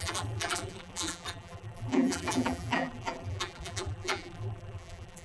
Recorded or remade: remade